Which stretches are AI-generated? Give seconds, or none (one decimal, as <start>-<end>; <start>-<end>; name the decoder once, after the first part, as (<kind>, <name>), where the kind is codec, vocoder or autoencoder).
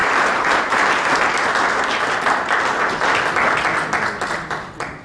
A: none